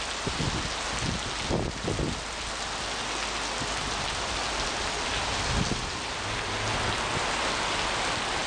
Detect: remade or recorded recorded